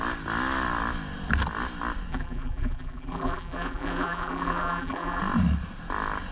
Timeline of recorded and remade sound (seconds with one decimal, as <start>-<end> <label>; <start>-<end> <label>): 0.0-2.1 recorded; 2.1-5.2 remade; 5.2-6.3 recorded